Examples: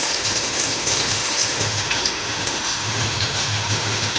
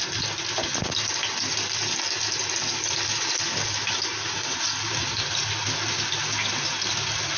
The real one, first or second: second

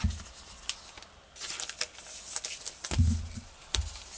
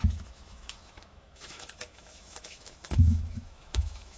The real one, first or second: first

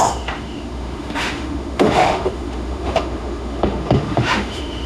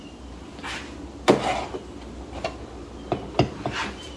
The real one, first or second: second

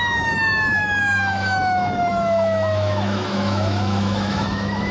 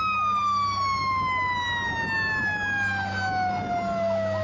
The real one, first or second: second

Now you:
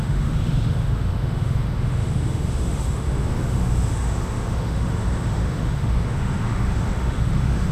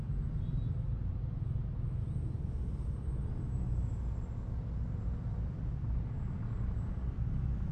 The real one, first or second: second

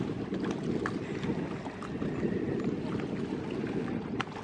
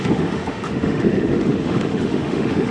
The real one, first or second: first